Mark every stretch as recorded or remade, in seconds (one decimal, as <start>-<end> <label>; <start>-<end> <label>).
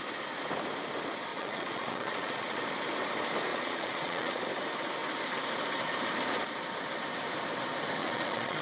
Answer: 0.0-1.3 recorded; 1.3-2.6 remade; 2.6-3.5 recorded; 3.5-4.4 remade; 4.4-8.0 recorded; 8.0-8.6 remade